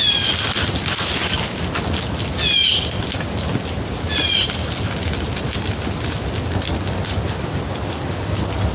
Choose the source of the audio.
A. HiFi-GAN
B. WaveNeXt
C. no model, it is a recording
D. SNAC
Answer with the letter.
C